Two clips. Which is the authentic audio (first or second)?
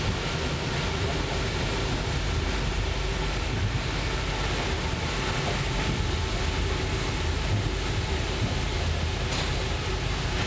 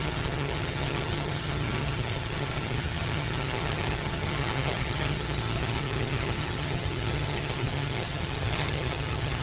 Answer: first